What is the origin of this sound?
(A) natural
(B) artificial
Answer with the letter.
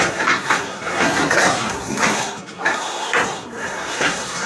B